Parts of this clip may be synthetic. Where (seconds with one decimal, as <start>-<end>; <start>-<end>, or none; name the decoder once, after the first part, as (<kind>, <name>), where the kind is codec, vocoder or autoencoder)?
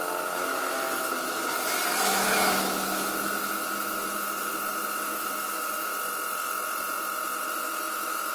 0.0-1.4 (autoencoder, DAC-VAE); 2.0-4.5; 5.0-5.9; 7.5-8.3